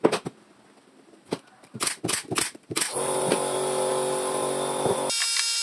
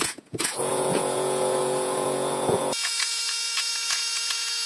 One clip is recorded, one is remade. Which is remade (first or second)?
second